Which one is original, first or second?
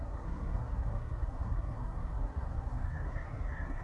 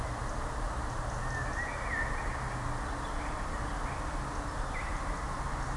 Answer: second